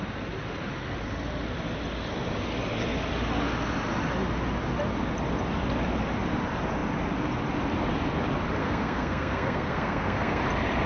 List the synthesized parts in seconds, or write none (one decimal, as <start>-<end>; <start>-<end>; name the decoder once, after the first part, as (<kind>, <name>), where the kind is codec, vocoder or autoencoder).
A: 8.6-10.4 (codec, SNAC)